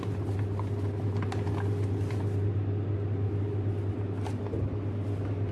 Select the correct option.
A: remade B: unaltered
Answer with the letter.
B